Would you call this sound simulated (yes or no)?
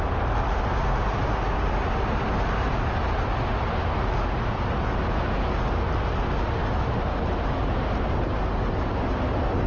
no